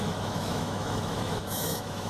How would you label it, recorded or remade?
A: remade